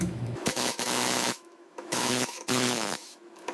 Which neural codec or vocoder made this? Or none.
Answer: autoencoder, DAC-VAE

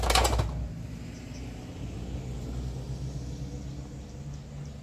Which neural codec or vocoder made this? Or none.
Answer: none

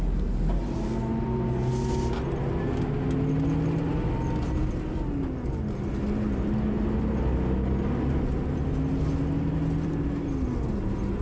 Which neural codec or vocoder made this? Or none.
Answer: none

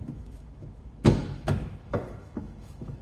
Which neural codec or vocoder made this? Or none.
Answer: autoencoder, DAC-VAE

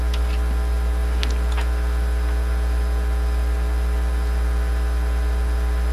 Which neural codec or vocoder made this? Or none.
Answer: none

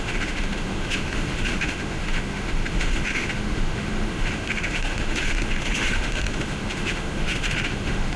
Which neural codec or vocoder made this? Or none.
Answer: autoencoder, DAC-VAE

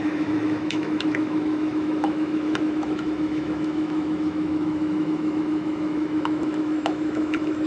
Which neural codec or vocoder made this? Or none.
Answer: autoencoder, DAC-VAE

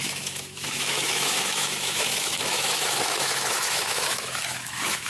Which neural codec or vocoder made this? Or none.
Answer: autoencoder, DAC-VAE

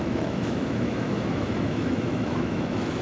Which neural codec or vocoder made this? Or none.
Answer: autoencoder, DAC-VAE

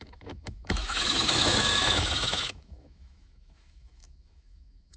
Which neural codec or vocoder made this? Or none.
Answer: autoencoder, DAC-VAE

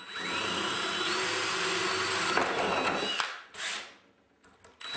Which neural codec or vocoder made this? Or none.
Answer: none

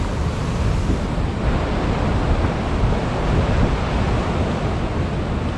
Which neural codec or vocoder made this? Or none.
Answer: none